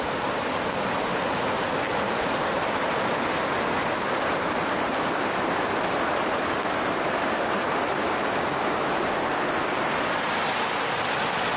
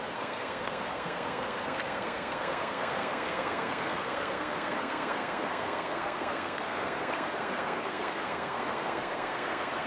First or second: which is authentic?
first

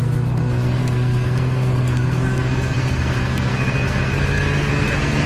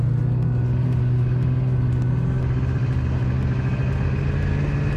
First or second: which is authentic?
second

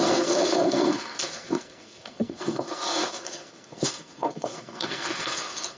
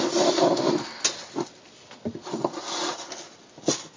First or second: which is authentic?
second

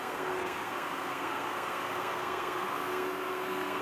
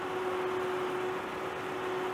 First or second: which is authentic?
second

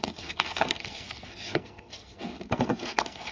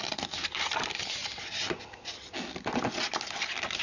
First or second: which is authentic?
second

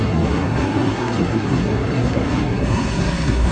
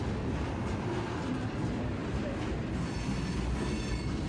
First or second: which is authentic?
second